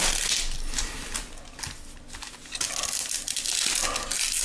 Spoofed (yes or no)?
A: no